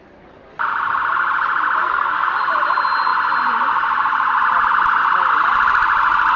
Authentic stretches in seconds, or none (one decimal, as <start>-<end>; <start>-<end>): 0.0-1.8; 2.3-6.4